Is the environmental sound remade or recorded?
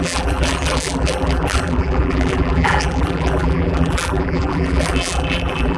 remade